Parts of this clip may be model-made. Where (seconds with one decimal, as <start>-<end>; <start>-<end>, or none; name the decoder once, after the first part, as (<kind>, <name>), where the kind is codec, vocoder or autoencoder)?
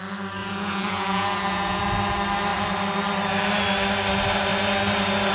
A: 0.4-1.8 (vocoder, Vocos)